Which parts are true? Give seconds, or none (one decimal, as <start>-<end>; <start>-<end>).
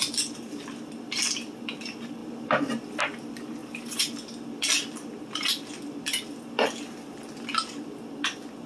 0.0-8.7